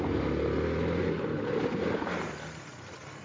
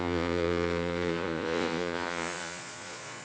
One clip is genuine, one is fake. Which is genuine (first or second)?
first